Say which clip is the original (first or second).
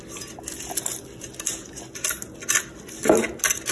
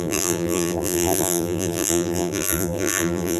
first